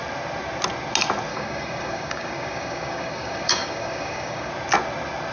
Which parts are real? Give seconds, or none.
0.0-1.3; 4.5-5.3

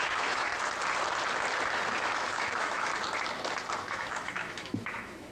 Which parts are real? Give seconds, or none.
0.5-2.0; 2.9-3.8

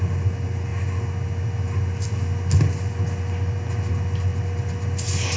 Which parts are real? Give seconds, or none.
0.0-5.4

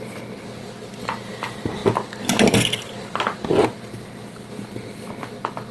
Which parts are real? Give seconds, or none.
1.8-5.2

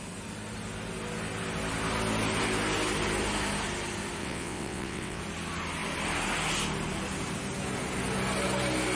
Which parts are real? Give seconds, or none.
0.0-4.2; 5.2-9.0

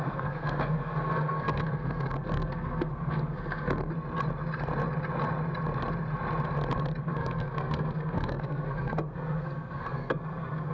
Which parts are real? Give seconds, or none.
3.9-7.0

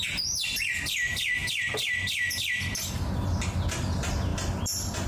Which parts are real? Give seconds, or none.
0.0-1.4; 2.9-4.3